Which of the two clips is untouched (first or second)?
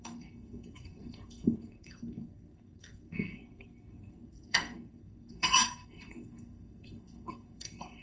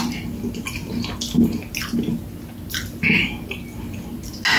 second